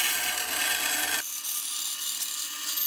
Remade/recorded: recorded